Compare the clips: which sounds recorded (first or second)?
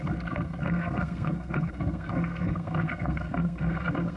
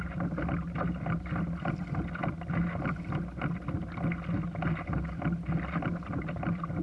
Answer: second